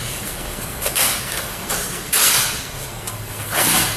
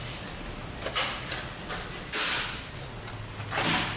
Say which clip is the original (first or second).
second